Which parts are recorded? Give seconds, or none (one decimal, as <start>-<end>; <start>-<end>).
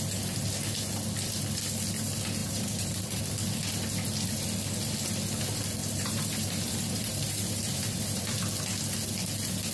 0.0-2.4; 3.2-5.8; 8.2-9.7